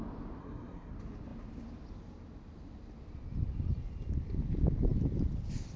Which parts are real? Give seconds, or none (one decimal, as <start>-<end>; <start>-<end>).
0.0-0.4; 0.9-5.8